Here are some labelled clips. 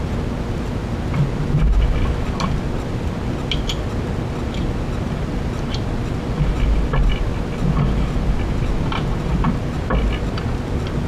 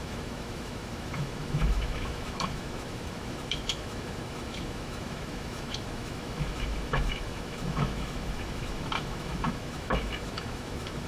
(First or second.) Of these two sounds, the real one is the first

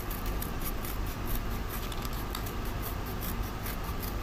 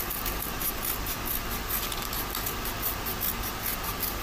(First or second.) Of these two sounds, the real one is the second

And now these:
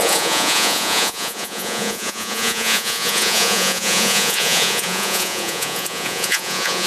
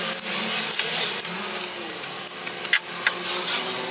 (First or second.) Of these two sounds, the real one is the second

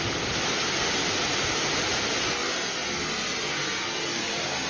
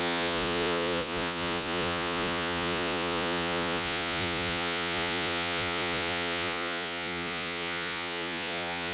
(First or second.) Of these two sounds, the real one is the first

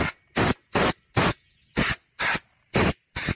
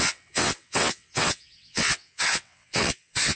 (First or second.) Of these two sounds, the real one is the first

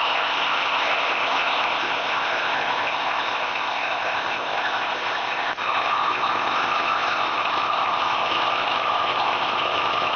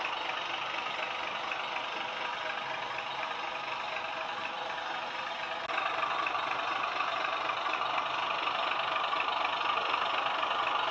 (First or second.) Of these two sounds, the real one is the second